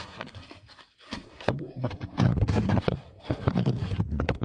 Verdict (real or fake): fake